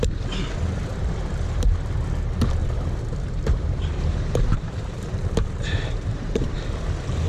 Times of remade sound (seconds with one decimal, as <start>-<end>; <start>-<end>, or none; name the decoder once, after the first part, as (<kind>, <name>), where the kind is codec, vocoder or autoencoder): 0.9-2.0 (vocoder, BigVGAN v2); 2.6-6.5